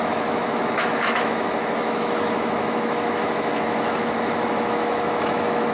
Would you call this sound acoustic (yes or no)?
no